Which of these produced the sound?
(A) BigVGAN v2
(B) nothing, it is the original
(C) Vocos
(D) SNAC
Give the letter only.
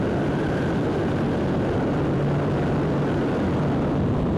A